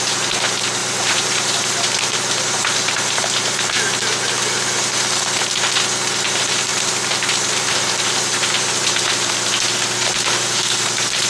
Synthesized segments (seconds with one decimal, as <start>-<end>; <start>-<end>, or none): 0.8-3.7; 6.7-9.5